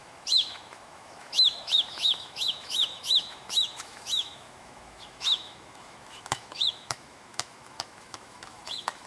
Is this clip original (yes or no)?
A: no